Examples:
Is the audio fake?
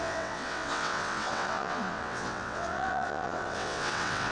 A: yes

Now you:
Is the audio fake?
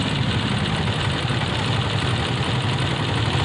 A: no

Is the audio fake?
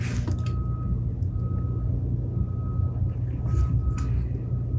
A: no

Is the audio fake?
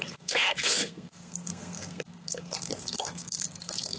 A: yes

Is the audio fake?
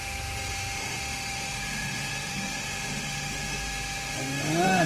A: yes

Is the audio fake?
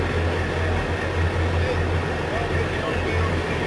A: no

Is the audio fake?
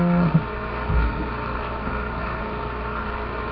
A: yes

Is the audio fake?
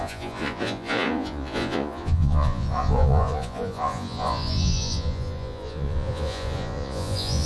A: yes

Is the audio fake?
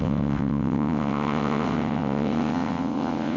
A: yes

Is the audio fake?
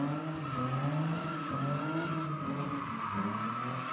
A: no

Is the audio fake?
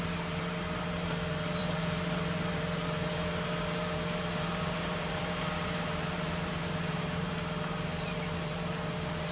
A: yes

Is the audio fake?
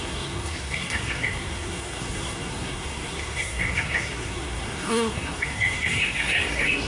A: yes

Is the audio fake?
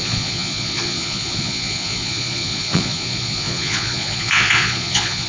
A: yes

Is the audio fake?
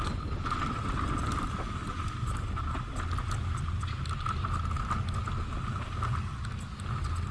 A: no